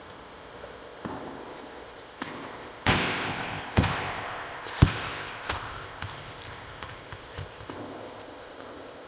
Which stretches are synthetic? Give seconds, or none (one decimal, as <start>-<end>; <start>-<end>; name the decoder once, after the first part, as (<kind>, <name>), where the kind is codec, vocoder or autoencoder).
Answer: 0.0-9.1 (codec, ZipCodec)